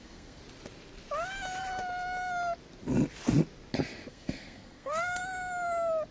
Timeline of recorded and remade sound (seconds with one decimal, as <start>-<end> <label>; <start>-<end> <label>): 0.0-0.4 remade; 0.4-4.1 recorded; 4.1-5.2 remade; 5.2-6.1 recorded